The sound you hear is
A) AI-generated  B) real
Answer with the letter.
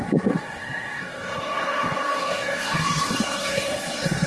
A